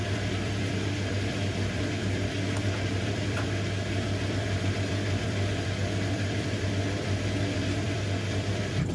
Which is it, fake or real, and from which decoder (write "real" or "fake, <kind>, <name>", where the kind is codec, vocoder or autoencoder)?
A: fake, vocoder, BigVGAN v2